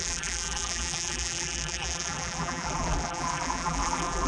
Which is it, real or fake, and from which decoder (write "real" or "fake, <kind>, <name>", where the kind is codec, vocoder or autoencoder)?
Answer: fake, vocoder, BigVGAN v2